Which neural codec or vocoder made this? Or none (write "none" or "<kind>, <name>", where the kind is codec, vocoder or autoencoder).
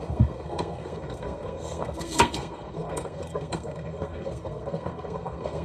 codec, SNAC